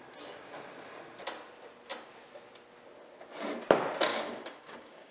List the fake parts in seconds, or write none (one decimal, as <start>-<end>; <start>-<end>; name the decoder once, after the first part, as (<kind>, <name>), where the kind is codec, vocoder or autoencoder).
4.1-5.1 (codec, DAC)